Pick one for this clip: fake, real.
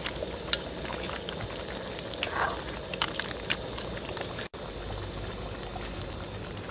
real